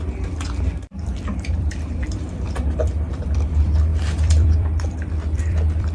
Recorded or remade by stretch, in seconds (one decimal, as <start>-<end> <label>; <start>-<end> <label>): 0.0-5.9 remade